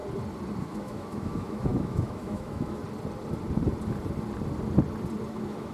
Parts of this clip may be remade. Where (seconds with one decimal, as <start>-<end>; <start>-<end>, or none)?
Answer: 0.6-2.8; 5.3-5.7